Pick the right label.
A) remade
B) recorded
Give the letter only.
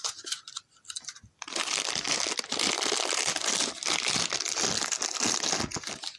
B